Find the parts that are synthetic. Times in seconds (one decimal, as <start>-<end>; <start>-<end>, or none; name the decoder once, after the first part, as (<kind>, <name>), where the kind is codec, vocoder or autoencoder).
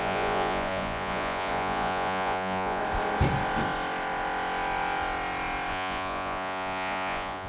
0.0-2.8 (vocoder, Vocos); 5.7-7.5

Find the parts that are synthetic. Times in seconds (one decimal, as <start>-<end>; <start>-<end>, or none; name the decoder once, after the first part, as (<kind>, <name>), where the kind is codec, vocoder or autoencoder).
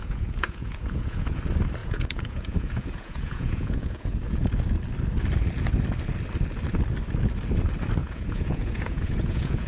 0.0-1.4 (vocoder, Vocos); 1.8-4.5; 8.0-9.7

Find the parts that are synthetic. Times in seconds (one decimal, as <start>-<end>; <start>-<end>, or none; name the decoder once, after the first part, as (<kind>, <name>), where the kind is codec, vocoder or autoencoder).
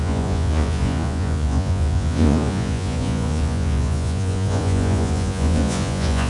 0.0-6.3 (vocoder, Vocos)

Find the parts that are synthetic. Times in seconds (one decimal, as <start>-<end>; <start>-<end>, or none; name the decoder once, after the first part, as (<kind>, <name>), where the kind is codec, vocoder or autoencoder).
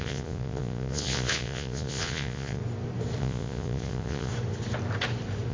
0.0-2.6 (vocoder, Vocos); 3.2-4.3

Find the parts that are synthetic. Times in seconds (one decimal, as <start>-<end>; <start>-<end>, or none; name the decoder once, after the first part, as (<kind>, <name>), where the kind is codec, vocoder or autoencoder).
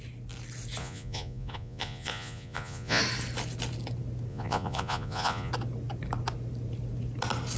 0.8-3.0 (vocoder, Vocos); 4.3-5.5